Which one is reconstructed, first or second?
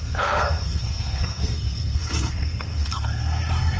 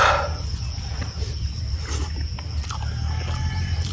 first